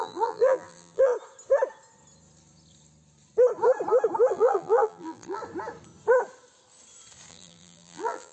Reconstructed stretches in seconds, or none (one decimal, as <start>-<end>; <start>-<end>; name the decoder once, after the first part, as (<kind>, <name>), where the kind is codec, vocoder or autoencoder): 0.0-1.1 (vocoder, BigVGAN v2); 4.3-5.4; 7.3-8.3